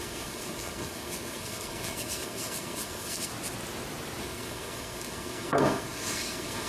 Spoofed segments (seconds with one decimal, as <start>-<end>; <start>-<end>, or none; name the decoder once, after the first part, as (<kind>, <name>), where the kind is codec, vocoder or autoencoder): 0.0-3.3 (codec, SNAC); 4.2-6.7